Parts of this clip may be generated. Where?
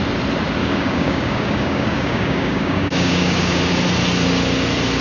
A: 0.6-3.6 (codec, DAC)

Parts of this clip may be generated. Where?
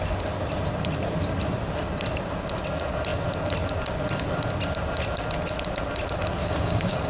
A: 6.4-7.1 (codec, DAC)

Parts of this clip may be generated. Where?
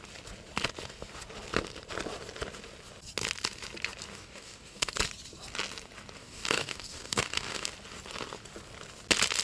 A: 4.1-4.9 (codec, DAC); 6.2-7.7